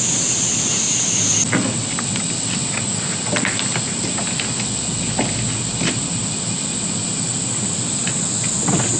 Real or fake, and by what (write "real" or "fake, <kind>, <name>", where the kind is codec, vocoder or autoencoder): real